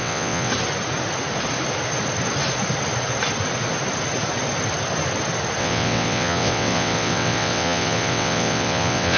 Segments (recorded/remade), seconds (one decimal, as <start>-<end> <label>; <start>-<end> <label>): 0.0-0.5 remade; 0.5-5.6 recorded; 5.6-9.2 remade